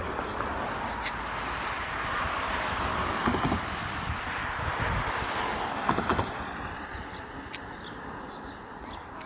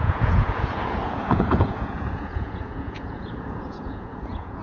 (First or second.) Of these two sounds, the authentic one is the first